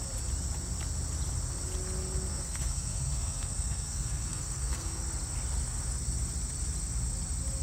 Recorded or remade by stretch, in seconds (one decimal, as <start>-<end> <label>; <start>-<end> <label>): 0.0-2.3 recorded; 2.3-5.0 remade; 5.0-7.6 recorded